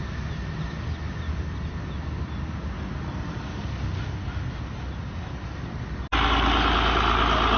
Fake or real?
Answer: real